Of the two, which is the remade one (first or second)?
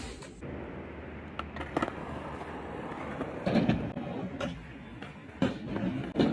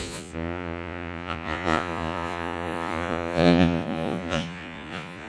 second